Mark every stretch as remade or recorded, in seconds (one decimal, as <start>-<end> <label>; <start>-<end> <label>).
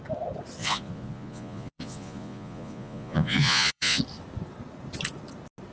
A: 0.0-0.6 recorded; 0.6-4.0 remade; 4.0-5.7 recorded